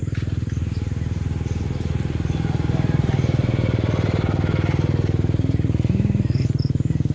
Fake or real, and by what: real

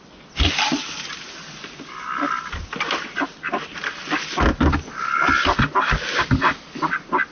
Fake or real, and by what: real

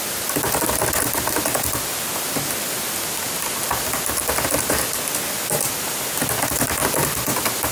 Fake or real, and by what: real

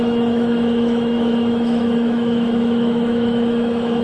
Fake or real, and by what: fake, autoencoder, DAC-VAE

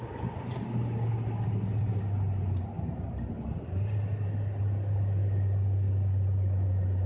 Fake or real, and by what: real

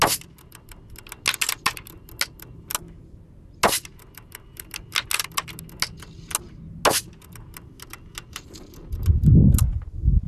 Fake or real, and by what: real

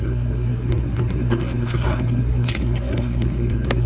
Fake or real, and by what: fake, codec, SNAC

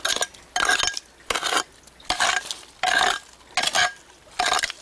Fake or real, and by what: real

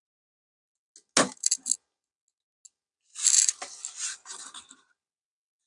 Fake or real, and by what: real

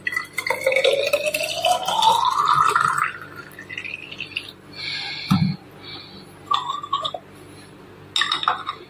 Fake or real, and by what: real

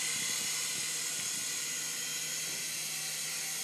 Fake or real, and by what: real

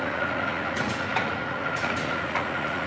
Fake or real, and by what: fake, vocoder, Vocos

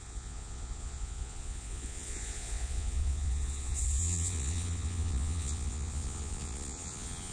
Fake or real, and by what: fake, vocoder, Vocos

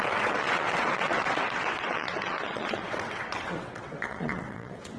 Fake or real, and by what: fake, vocoder, WaveNeXt